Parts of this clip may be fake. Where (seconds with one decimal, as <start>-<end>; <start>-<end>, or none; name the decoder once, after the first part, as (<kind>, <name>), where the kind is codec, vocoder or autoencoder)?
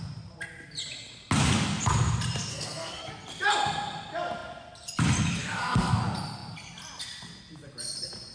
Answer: 2.5-3.1 (codec, SNAC); 5.4-6.0